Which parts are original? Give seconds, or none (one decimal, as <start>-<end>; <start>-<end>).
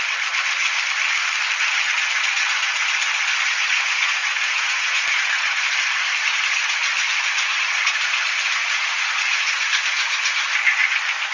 0.0-3.5; 5.7-7.5; 8.2-8.6; 10.5-11.3